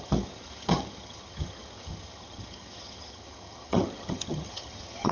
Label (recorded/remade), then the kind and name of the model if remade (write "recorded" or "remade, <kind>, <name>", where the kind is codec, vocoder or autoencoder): remade, vocoder, HiFi-GAN